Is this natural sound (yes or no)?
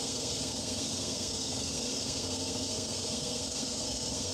no